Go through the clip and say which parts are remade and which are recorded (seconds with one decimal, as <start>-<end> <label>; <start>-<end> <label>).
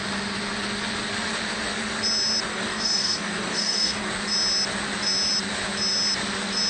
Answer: 0.0-2.5 recorded; 2.5-4.1 remade; 4.1-6.7 recorded